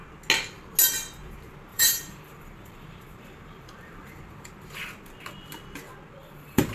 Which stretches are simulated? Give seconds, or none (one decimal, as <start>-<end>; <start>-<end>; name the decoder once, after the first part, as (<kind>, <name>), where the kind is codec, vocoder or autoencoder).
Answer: 1.7-4.8 (vocoder, BigVGAN v2); 6.2-6.7